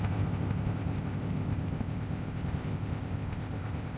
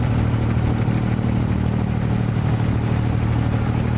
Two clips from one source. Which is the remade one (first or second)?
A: first